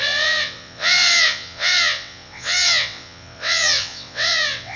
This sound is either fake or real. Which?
fake